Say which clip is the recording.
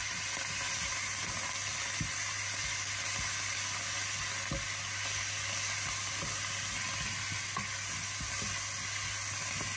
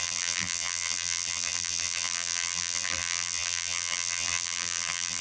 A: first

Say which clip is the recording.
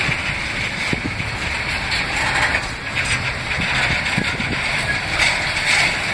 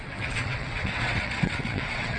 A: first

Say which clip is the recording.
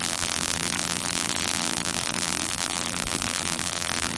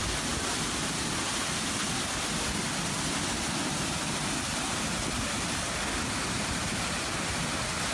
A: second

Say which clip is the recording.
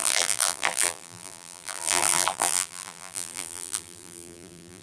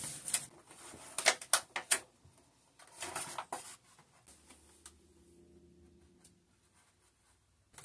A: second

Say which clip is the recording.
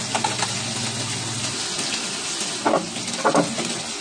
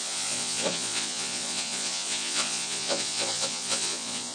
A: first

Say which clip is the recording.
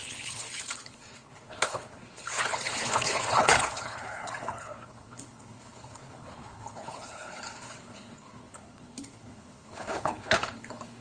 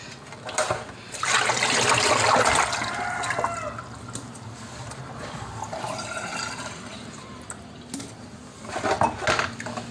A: second